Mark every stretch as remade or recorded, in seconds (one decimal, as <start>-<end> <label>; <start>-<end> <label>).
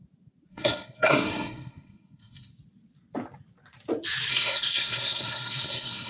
0.0-0.5 recorded; 0.5-2.5 remade; 2.5-4.3 recorded; 4.3-6.1 remade